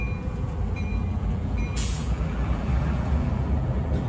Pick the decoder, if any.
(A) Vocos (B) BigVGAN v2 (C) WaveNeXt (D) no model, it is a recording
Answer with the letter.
B